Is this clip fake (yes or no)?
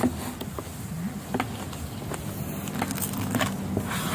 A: no